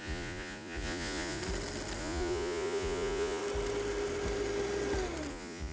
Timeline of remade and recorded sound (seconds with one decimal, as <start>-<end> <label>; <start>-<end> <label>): 0.0-1.4 remade; 1.4-2.0 recorded; 2.0-3.4 remade; 3.4-5.3 recorded; 5.3-5.7 remade